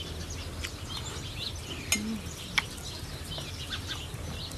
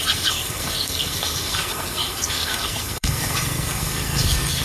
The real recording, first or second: first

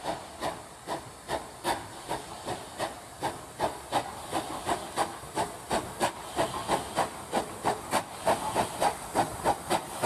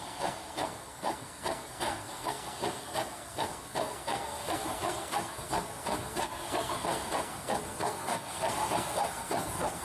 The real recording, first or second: first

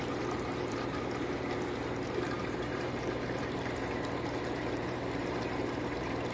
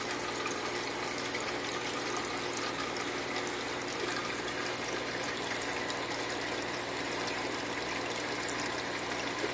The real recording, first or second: second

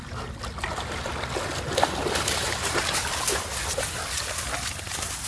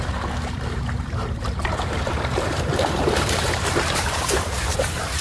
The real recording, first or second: first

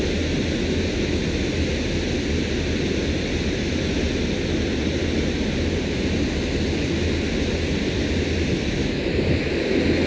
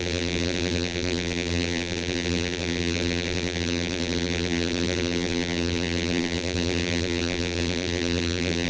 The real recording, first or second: first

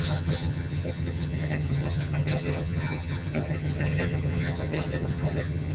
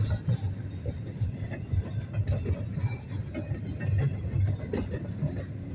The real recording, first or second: second